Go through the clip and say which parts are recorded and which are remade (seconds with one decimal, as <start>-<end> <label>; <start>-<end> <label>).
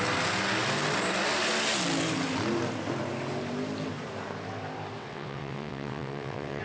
0.0-5.0 recorded; 5.0-6.6 remade